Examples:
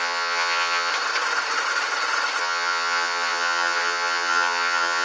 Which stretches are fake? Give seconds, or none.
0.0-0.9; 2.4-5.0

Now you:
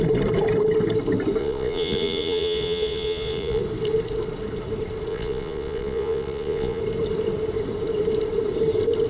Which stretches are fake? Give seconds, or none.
1.4-3.6; 5.1-6.8

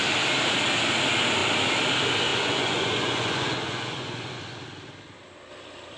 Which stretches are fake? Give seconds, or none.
2.3-4.4

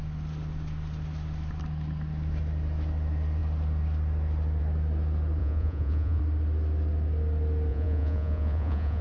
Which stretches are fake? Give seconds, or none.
5.4-6.2; 7.7-9.0

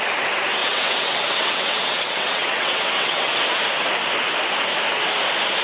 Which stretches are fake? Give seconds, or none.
0.6-3.3

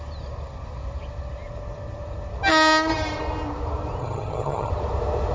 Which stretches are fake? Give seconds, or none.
4.0-4.7

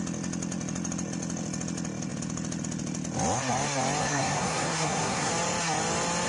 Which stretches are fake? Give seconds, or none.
4.0-5.3

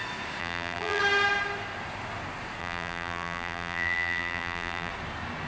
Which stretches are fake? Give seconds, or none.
0.4-1.0; 2.6-4.9